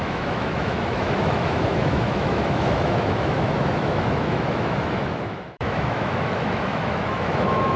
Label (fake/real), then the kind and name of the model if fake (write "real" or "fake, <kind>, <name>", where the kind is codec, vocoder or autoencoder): fake, autoencoder, DAC-VAE